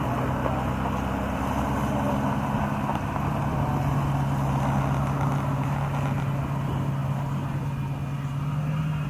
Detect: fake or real real